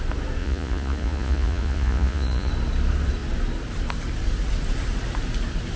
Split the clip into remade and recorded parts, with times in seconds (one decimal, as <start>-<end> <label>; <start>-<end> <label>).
0.0-0.4 recorded; 0.4-2.5 remade; 2.5-5.8 recorded